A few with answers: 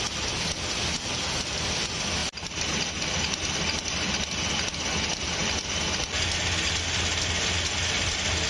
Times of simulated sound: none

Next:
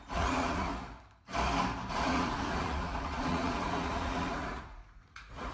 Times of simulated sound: 0.0-0.7; 1.9-5.5

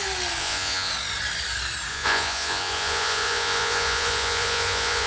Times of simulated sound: 0.4-0.9; 1.9-5.1

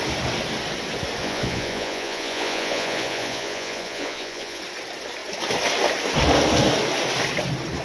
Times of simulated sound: 1.2-4.6

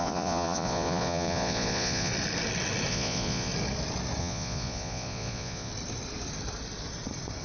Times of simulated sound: 0.0-2.1; 2.9-3.5; 4.2-5.7